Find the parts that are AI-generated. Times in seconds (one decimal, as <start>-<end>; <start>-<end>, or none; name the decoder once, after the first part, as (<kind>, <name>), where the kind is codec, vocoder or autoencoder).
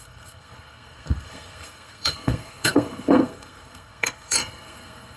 0.0-5.2 (codec, SNAC)